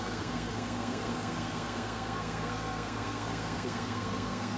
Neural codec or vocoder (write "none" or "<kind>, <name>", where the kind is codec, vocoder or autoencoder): codec, SNAC